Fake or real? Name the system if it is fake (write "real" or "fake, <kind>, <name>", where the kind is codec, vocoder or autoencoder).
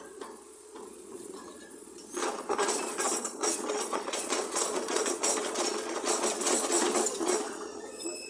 fake, vocoder, Vocos